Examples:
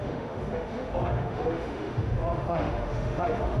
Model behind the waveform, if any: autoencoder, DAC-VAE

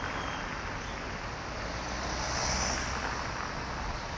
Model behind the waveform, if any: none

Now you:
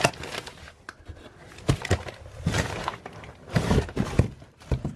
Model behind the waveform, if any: none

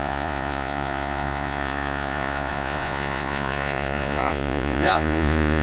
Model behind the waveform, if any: vocoder, Vocos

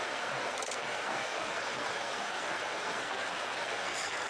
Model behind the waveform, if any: codec, SNAC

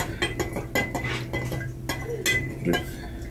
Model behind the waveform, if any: none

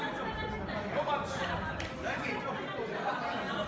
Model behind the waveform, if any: none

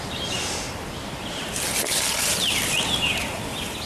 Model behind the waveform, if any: none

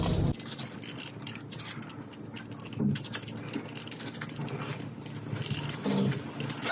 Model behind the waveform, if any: none